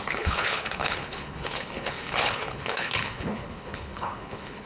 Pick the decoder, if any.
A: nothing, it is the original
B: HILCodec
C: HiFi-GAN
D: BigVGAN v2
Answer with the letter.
B